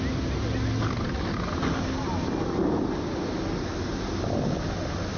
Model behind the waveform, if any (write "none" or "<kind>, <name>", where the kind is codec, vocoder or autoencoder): none